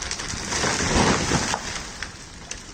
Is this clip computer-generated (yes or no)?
no